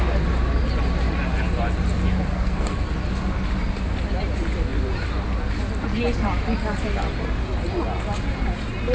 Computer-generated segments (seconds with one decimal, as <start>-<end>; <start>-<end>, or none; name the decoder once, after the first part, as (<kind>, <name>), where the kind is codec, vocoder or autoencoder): 2.3-2.8 (codec, SNAC)

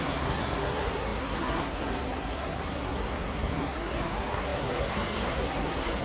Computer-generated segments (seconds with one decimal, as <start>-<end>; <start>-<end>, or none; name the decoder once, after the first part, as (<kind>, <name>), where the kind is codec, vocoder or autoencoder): 0.0-6.0 (codec, SNAC)

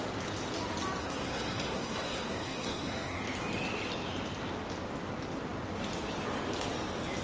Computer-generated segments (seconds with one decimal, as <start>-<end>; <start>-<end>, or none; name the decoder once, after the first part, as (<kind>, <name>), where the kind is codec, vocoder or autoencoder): 1.0-3.2 (codec, SNAC)

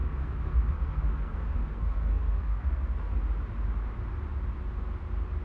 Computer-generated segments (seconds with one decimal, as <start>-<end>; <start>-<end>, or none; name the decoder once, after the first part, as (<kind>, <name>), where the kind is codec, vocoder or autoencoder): 0.0-3.2 (codec, SNAC)